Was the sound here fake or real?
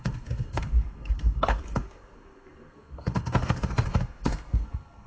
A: fake